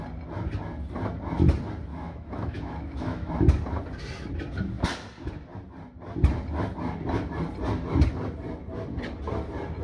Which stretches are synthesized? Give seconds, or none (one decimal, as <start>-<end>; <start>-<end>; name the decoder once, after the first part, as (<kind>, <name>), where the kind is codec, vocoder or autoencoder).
1.9-3.3 (autoencoder, DAC-VAE)